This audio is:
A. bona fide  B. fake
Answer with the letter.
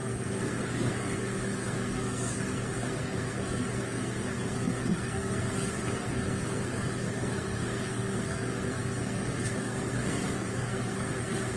B